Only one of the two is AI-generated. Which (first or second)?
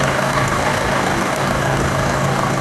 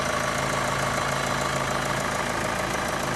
first